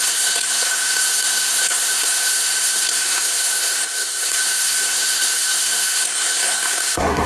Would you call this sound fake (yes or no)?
yes